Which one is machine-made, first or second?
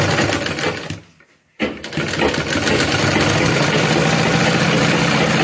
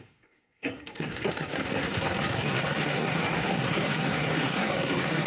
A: second